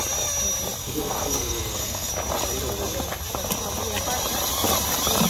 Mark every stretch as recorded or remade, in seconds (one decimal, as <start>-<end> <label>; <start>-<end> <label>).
0.0-0.8 recorded; 0.8-2.1 remade; 2.1-5.3 recorded